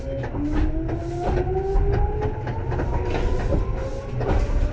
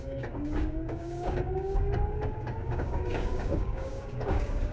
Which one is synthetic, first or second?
second